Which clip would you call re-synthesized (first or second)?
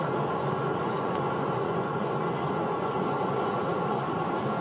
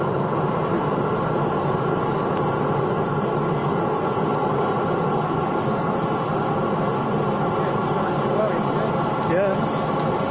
first